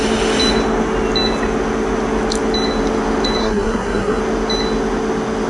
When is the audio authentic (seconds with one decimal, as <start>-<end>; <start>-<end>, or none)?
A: 0.0-3.4; 4.2-5.5